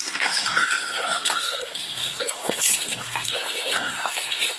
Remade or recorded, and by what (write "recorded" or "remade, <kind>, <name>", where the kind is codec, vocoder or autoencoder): remade, codec, SNAC